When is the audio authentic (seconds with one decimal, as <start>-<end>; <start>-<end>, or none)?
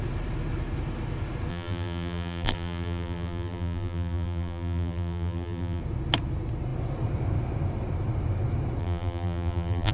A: 0.0-1.5; 5.8-8.8